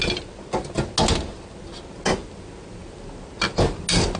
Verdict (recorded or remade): recorded